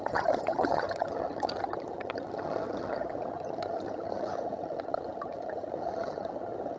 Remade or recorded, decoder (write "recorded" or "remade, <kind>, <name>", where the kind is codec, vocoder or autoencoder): remade, vocoder, HiFi-GAN